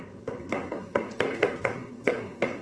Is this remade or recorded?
remade